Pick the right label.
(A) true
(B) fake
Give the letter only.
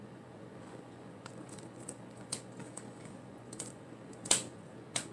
B